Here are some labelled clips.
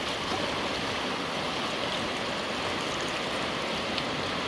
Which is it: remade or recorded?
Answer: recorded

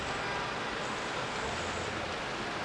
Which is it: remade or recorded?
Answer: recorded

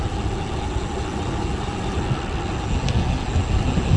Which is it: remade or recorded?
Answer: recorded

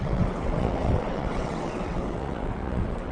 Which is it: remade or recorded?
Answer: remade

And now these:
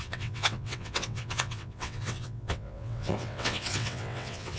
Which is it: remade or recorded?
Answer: remade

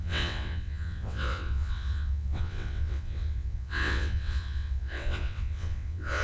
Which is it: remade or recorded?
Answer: remade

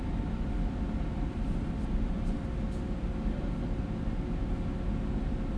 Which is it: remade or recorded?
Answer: recorded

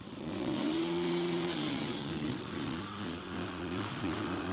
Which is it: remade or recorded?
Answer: remade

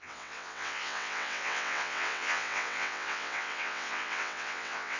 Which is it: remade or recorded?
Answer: remade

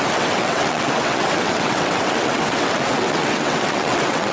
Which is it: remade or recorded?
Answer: remade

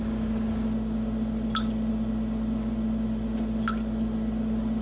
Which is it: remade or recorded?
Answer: recorded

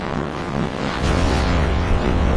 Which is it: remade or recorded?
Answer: remade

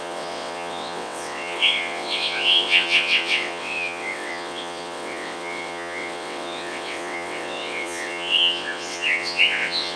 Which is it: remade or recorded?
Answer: remade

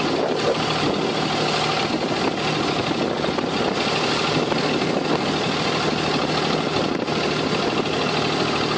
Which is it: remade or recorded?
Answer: recorded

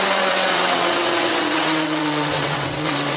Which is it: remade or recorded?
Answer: remade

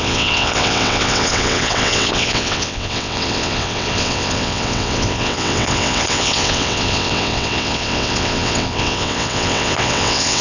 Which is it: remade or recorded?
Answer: remade